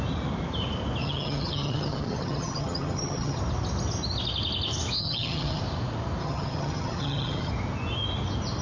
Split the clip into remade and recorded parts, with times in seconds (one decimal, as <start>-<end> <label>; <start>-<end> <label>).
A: 0.0-1.0 recorded; 1.0-3.4 remade; 3.4-5.0 recorded; 5.0-5.6 remade; 5.6-6.2 recorded; 6.2-7.5 remade; 7.5-8.6 recorded